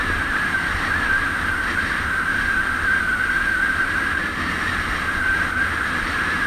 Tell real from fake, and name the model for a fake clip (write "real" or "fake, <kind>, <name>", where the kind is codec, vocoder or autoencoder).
real